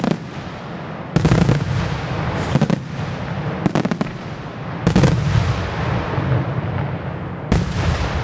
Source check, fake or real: real